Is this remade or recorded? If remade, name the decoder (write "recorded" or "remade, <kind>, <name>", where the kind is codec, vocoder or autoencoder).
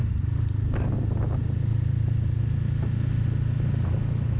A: recorded